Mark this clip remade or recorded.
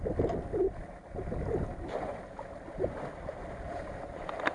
recorded